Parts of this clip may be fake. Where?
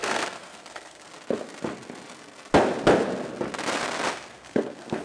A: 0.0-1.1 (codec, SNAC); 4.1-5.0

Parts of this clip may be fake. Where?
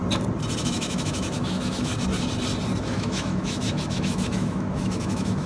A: 0.6-1.9 (autoencoder, DAC-VAE); 2.8-5.5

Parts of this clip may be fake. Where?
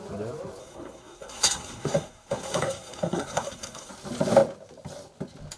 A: 0.6-3.9 (codec, SNAC)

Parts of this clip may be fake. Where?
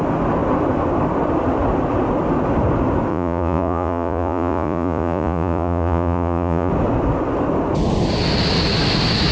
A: 3.1-6.7 (vocoder, Vocos)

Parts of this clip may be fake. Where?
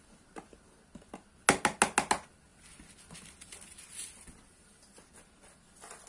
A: none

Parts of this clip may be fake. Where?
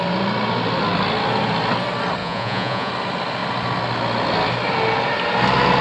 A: 2.2-2.9 (vocoder, Vocos)